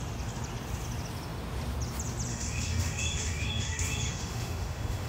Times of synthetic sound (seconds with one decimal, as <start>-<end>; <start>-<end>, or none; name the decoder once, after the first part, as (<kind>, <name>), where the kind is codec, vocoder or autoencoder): 2.3-5.1 (autoencoder, DAC-VAE)